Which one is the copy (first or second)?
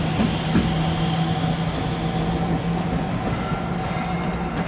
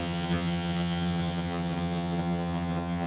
second